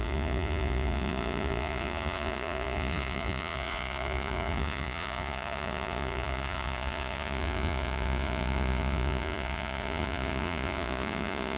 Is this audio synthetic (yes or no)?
yes